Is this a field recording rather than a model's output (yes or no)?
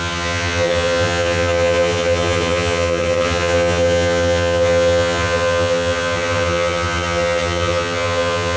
no